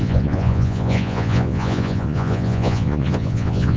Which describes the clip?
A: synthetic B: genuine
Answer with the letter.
A